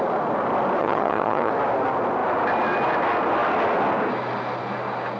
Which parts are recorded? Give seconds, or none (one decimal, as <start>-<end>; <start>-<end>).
0.0-0.8; 1.5-5.2